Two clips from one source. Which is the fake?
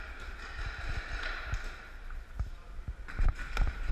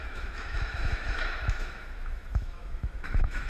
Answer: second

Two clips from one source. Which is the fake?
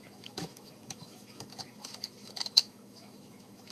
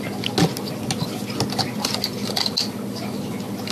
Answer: first